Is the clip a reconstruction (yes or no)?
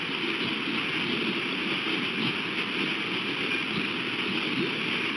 no